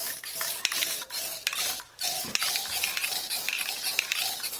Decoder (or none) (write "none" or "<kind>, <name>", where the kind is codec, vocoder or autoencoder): vocoder, BigVGAN v2